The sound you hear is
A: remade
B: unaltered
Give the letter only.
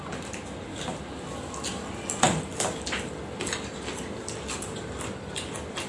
B